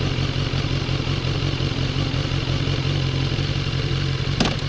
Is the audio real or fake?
real